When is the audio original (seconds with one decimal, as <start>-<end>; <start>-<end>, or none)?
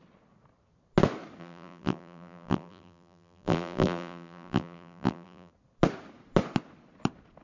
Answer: 0.0-1.4; 5.5-7.4